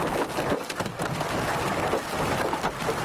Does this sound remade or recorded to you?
recorded